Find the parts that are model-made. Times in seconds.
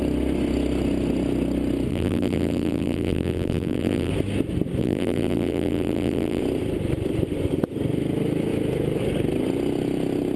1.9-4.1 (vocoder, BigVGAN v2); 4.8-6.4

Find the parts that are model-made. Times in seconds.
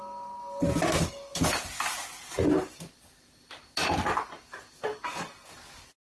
none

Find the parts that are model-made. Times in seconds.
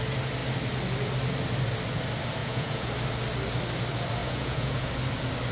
2.4-2.9 (vocoder, Vocos); 4.2-4.9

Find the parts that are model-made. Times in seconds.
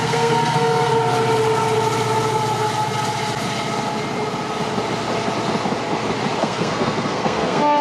0.0-0.9 (codec, SNAC); 6.4-7.8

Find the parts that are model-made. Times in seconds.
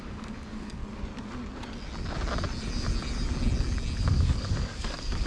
0.0-0.8 (codec, DAC); 4.0-5.3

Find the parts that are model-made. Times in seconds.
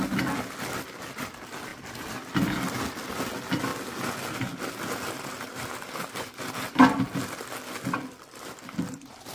0.0-3.7 (vocoder, BigVGAN v2); 7.9-9.3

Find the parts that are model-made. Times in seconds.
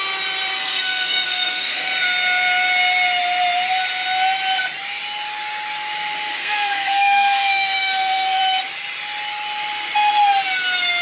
0.5-1.9 (codec, SNAC); 6.3-8.4